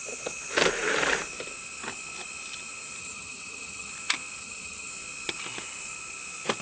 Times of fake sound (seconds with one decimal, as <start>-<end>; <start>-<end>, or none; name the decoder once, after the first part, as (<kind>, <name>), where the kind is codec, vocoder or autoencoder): 3.0-3.9 (vocoder, HiFi-GAN); 4.4-4.9